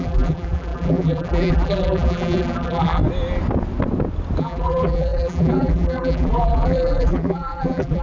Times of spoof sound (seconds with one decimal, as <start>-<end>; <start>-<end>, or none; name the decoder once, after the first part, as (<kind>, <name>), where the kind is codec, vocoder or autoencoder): 0.0-3.0 (vocoder, BigVGAN v2); 4.4-8.0